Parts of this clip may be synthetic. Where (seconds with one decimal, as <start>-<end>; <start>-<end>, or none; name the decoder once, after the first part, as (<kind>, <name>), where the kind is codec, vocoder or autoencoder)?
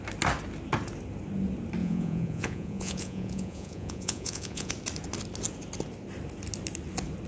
1.8-4.7 (vocoder, Vocos)